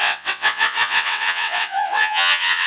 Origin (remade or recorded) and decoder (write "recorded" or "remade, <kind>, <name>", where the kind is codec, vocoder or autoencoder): remade, vocoder, WaveNeXt